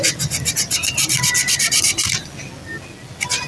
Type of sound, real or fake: real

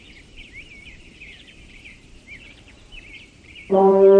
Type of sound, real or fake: fake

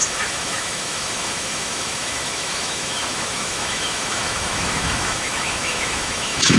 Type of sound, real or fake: fake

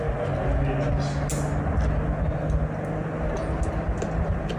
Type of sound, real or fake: real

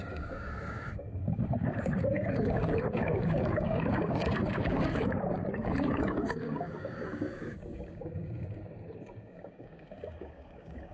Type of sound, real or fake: fake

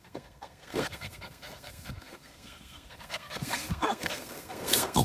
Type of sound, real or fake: fake